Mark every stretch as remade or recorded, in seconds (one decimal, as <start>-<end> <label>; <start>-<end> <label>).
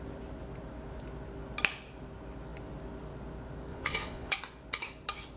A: 0.0-3.7 recorded; 3.7-4.4 remade; 4.4-5.4 recorded